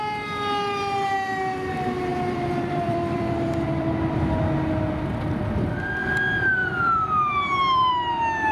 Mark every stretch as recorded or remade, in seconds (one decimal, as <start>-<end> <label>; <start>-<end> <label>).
0.0-2.1 recorded; 2.1-4.3 remade; 4.3-6.6 recorded; 6.6-7.9 remade; 7.9-8.5 recorded